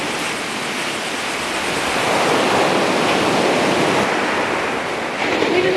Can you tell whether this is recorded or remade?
recorded